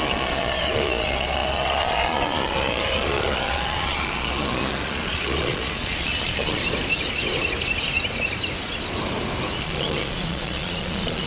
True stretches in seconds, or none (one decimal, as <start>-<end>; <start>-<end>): 6.6-9.6